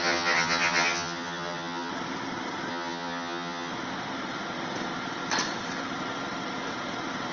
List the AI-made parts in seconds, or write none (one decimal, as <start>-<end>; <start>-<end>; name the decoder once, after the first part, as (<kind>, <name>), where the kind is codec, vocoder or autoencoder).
0.0-1.9 (vocoder, HiFi-GAN); 2.7-3.7